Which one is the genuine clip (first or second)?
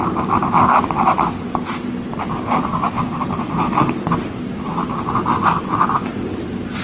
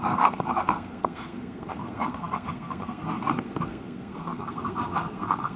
first